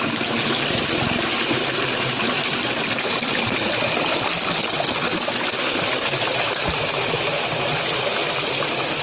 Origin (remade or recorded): recorded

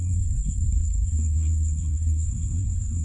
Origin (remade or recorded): remade